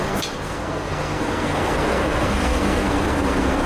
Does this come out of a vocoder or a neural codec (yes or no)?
yes